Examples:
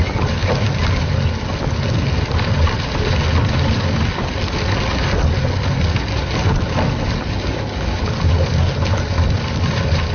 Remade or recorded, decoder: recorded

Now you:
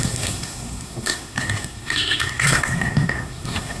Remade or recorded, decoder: remade, codec, SNAC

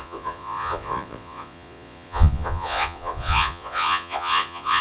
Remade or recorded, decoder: remade, vocoder, Vocos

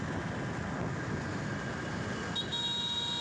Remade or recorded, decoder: recorded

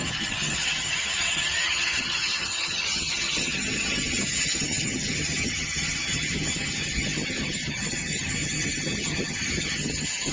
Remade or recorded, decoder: remade, vocoder, HiFi-GAN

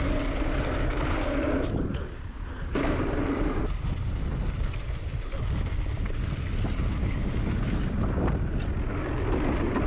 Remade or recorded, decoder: recorded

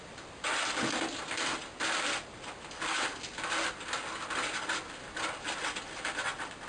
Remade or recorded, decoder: recorded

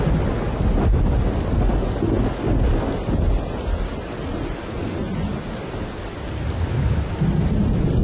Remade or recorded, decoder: recorded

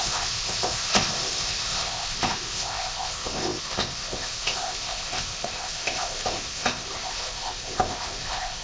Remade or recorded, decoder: remade, codec, ZipCodec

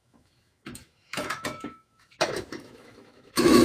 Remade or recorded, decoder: remade, autoencoder, DAC-VAE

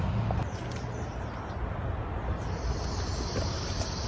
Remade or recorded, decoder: recorded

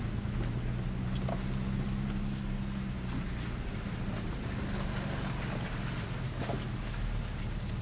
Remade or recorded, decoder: recorded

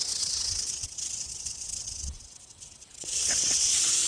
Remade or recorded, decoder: remade, vocoder, WaveNeXt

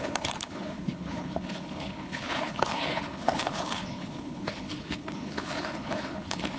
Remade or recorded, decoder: remade, codec, HILCodec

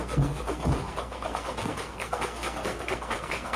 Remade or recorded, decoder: remade, codec, SNAC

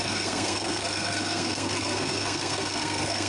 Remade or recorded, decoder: remade, codec, SNAC